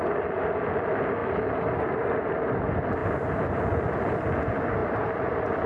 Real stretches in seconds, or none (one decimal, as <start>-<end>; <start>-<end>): 0.0-3.0; 3.6-4.8